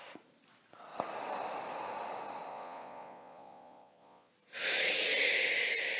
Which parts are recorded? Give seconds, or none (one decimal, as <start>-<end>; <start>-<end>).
0.0-2.5; 4.3-6.0